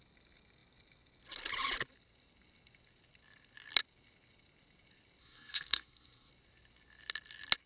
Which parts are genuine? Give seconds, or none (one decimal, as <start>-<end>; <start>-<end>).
0.0-5.2; 6.3-7.7